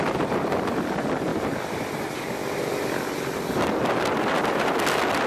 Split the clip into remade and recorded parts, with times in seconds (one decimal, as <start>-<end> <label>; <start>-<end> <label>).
0.0-5.3 recorded